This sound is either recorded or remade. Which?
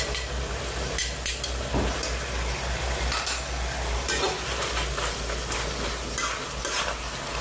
recorded